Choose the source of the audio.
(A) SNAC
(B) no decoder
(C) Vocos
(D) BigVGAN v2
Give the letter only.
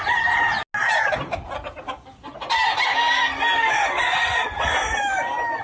B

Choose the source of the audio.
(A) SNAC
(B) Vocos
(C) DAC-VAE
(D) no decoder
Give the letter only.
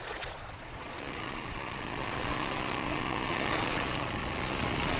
B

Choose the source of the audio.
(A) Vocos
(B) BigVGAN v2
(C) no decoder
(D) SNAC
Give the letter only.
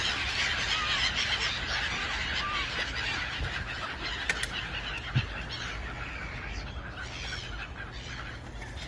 C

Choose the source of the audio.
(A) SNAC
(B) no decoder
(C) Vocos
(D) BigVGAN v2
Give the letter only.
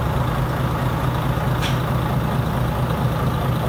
B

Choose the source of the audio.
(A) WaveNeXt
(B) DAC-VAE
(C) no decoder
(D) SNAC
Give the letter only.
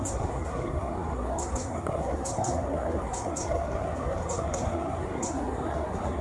D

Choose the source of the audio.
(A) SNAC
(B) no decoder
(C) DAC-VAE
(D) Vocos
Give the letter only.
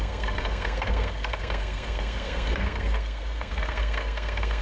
A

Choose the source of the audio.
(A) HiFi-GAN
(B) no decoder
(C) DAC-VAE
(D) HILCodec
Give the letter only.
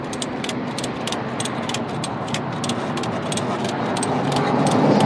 B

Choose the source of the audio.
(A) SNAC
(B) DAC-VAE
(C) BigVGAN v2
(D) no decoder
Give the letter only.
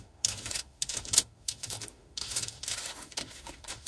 B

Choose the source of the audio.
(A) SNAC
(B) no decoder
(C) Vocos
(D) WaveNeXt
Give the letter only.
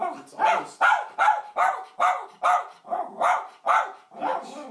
B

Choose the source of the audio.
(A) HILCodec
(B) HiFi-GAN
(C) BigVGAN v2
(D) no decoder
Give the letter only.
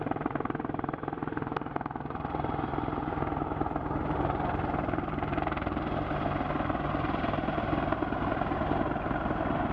C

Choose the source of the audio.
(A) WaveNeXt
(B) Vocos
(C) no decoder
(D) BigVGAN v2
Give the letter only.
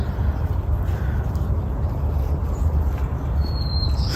C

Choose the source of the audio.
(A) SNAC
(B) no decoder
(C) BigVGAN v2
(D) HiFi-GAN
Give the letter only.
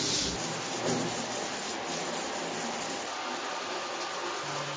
B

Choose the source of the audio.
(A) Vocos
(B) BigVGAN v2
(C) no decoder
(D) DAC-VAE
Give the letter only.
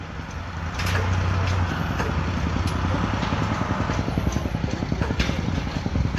C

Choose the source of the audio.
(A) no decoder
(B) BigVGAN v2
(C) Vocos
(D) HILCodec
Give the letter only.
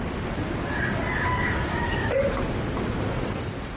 A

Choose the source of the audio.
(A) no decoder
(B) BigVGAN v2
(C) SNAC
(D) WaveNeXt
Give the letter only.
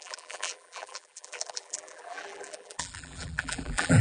B